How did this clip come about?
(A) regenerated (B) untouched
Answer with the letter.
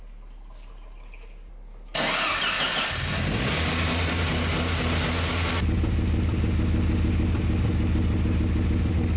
B